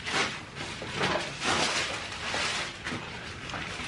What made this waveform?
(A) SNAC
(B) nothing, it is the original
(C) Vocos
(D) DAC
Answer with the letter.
B